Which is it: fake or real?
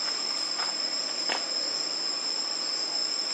real